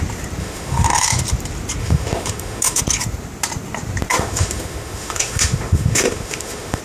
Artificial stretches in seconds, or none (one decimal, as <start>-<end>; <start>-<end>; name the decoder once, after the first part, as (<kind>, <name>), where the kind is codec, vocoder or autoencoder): 0.4-1.2 (autoencoder, DAC-VAE); 1.8-2.8; 4.1-6.8